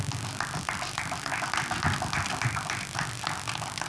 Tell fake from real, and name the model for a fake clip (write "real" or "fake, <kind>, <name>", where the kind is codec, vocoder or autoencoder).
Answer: real